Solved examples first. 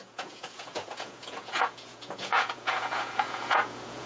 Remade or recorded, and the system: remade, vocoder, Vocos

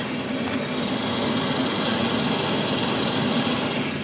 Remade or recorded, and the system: recorded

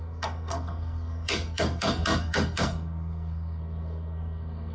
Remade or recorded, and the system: remade, codec, SNAC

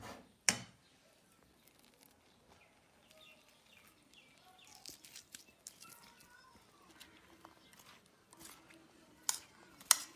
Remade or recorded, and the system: recorded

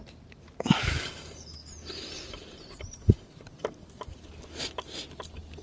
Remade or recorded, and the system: recorded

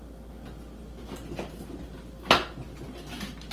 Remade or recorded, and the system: recorded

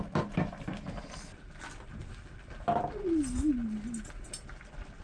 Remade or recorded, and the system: recorded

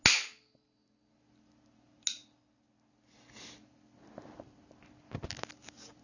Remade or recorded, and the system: recorded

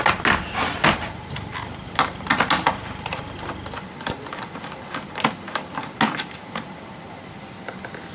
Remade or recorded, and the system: recorded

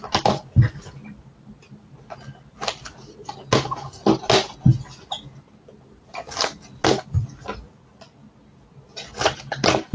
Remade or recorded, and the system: recorded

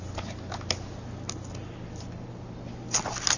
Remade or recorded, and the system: recorded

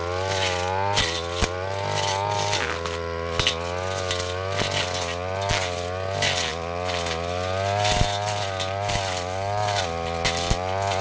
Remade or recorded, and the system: recorded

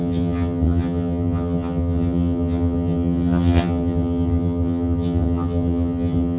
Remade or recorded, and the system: remade, vocoder, HiFi-GAN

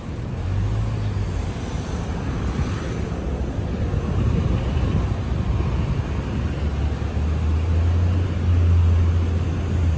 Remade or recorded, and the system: recorded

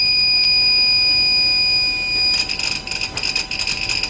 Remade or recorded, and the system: recorded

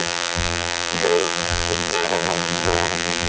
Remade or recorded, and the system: remade, vocoder, BigVGAN v2